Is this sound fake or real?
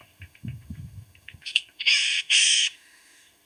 fake